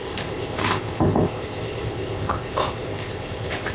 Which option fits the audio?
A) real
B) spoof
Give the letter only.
B